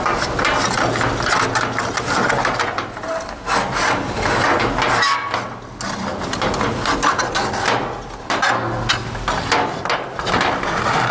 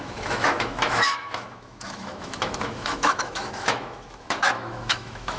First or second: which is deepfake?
second